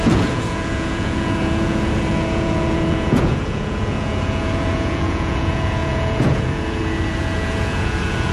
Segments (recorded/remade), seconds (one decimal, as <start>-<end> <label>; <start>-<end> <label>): 0.0-8.3 remade